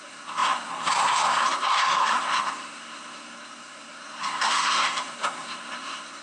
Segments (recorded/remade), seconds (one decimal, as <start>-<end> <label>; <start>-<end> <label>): 0.0-6.2 remade